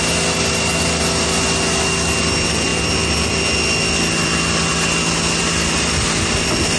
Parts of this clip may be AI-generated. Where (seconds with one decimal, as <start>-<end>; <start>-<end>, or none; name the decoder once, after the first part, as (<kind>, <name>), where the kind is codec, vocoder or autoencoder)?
none